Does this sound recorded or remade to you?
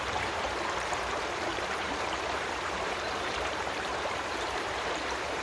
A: remade